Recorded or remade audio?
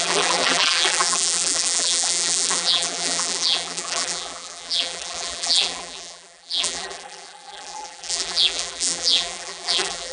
remade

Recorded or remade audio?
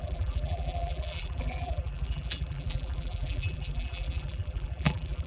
remade